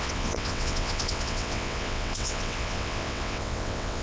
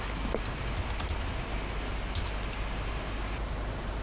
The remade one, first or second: first